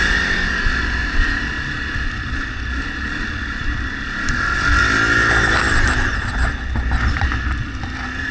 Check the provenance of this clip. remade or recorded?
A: recorded